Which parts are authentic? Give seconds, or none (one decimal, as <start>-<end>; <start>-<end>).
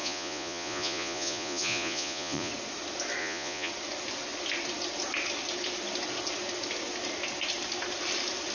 2.5-3.2; 3.7-8.5